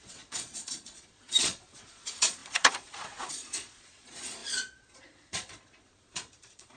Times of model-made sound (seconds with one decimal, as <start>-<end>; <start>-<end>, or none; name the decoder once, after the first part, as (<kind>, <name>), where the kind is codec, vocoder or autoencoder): 0.0-6.8 (vocoder, Vocos)